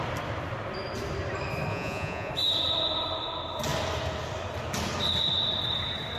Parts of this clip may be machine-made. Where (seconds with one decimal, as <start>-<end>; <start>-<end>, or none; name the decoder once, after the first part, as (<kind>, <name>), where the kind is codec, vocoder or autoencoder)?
1.7-2.3 (vocoder, Vocos)